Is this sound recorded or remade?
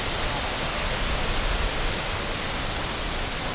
recorded